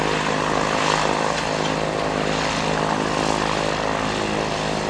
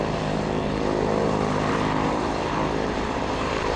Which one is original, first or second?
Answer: first